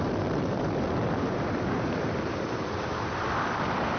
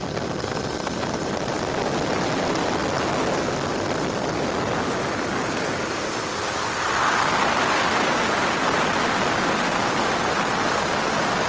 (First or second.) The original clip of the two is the second